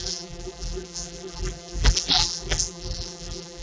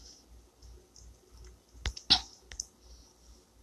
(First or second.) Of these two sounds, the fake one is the first